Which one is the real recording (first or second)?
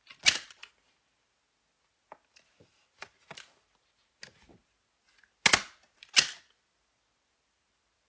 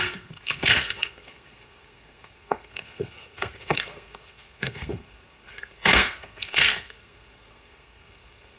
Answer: first